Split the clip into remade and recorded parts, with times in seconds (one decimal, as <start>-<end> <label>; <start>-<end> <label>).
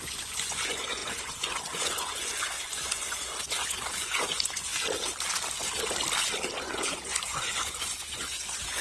0.0-4.7 remade; 4.7-6.6 recorded; 6.6-8.8 remade